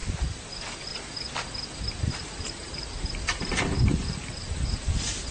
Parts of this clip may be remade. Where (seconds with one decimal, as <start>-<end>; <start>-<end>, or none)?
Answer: 0.0-0.9; 1.9-5.3